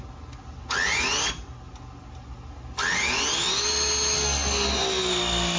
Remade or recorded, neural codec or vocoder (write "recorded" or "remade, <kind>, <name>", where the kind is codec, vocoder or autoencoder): recorded